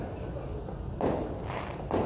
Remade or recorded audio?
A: recorded